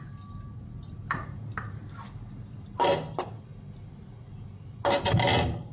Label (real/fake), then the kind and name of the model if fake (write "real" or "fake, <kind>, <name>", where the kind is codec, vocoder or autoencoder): real